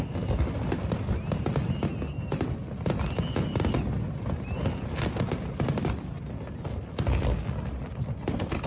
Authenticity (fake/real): real